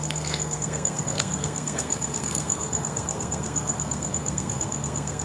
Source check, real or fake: fake